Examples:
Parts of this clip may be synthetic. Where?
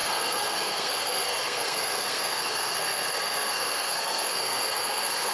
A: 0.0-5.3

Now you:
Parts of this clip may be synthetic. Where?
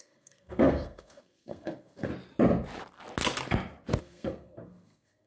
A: 0.0-2.1; 4.0-5.3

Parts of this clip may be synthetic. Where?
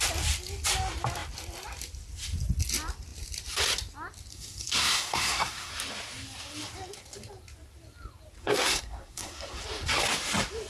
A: 4.3-5.7; 8.4-9.6